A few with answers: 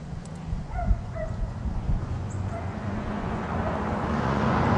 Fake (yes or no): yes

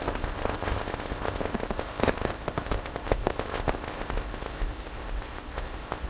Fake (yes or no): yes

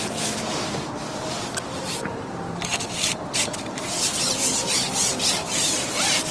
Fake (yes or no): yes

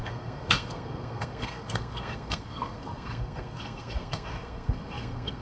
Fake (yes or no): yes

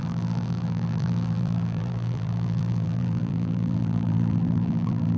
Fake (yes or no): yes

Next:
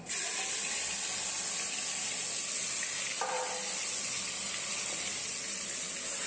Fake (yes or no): no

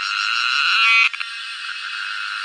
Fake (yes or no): no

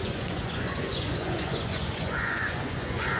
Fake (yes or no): yes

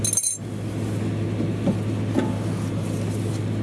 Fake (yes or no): no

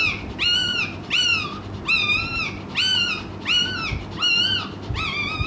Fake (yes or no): no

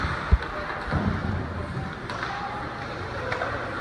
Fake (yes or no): no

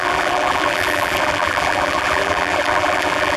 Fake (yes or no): yes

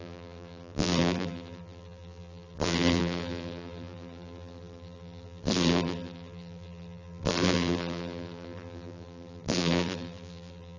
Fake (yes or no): yes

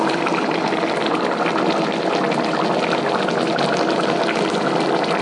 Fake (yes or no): no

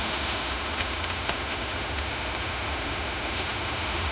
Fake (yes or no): yes